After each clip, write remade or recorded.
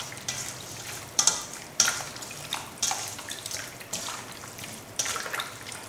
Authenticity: remade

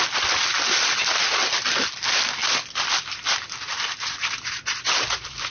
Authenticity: recorded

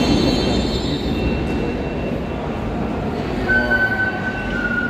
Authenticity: recorded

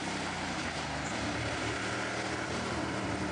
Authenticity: remade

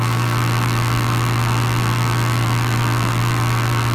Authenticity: remade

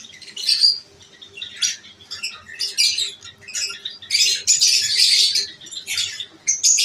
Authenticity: recorded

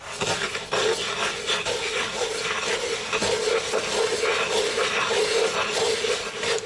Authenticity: recorded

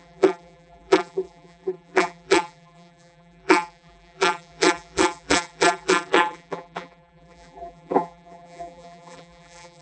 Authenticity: remade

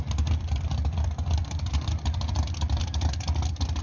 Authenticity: remade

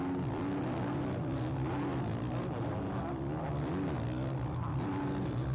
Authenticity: recorded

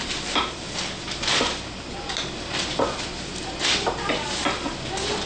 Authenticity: recorded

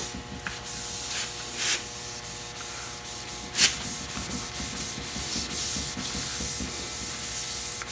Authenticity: recorded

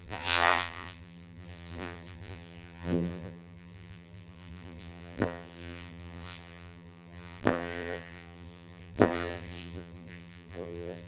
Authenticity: remade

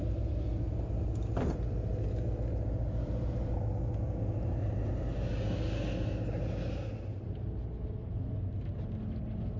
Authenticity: recorded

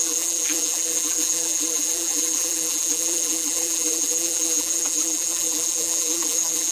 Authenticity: remade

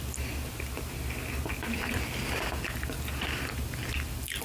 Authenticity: remade